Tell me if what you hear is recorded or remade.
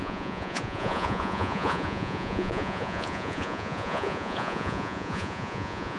remade